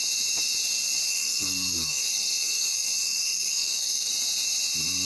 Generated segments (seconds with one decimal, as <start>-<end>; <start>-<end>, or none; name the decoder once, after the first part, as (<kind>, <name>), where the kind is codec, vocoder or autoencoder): 1.1-4.1 (codec, SNAC)